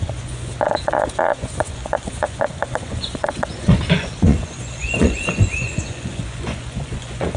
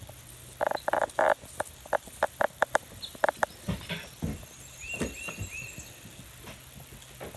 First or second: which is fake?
first